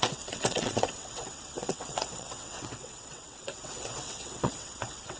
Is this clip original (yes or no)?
no